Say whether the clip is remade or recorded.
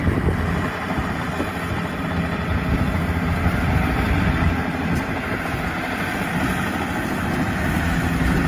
recorded